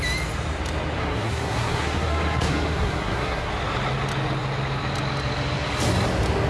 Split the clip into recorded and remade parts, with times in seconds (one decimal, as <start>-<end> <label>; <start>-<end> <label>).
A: 0.0-1.0 recorded; 1.0-3.5 remade; 3.5-6.5 recorded